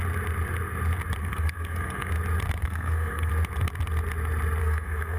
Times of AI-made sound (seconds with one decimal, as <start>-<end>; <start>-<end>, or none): 1.2-2.1; 2.6-3.3; 4.6-5.2

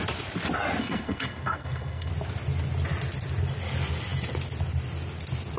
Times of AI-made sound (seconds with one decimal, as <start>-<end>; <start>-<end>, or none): 0.8-2.1

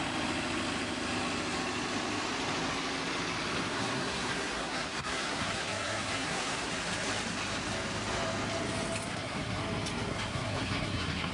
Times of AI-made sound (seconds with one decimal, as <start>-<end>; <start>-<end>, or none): 3.7-6.7; 9.1-9.6; 10.1-11.3

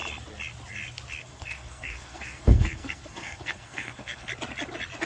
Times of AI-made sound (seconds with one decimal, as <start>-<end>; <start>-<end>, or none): 1.2-4.3

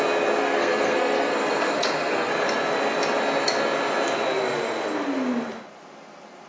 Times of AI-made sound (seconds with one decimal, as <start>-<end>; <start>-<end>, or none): 0.4-2.3

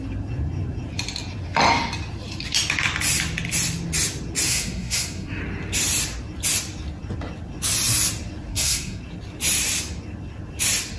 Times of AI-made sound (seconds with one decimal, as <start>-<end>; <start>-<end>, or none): 4.5-5.4; 8.5-9.0